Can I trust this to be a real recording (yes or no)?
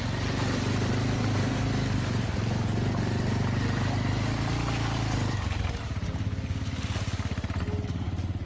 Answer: yes